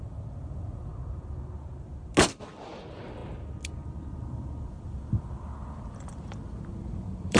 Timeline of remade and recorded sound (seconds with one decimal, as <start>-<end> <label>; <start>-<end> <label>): 0.0-0.9 remade; 0.9-2.4 recorded; 2.4-3.2 remade; 3.2-4.7 recorded; 4.7-7.4 remade